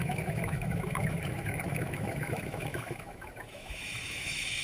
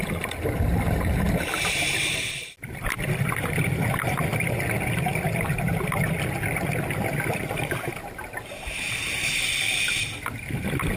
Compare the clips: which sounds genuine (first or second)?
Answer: second